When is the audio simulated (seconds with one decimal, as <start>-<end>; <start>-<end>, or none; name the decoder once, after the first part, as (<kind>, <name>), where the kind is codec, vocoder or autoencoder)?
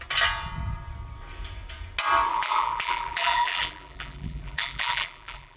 2.3-5.6 (vocoder, BigVGAN v2)